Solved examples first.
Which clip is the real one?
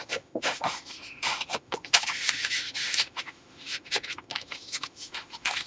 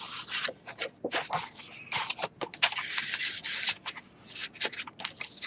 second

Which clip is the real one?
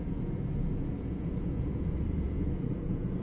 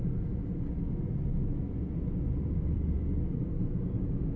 second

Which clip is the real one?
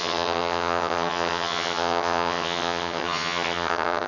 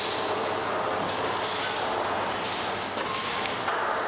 second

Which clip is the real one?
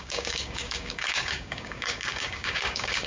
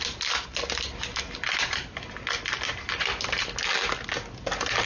second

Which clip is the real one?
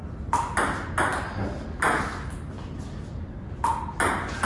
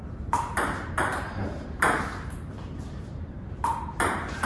first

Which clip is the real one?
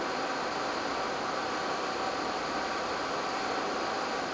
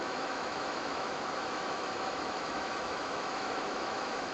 first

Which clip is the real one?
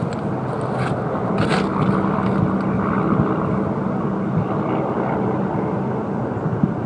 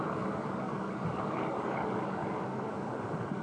first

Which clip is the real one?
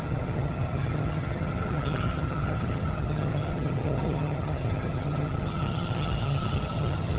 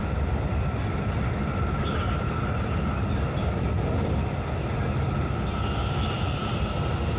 second